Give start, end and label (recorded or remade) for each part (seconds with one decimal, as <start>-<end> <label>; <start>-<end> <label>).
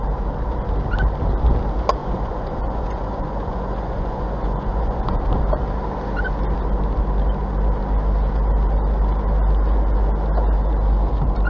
0.0-2.0 recorded; 2.0-5.2 remade; 5.2-11.5 recorded